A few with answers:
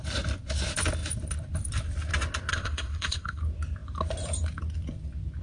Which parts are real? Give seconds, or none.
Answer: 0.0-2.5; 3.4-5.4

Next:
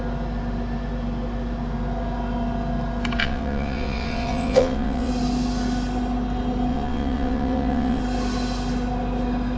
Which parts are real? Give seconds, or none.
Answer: 0.0-3.2; 5.1-6.7; 8.0-9.6

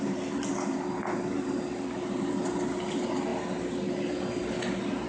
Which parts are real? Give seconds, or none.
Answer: 0.0-5.1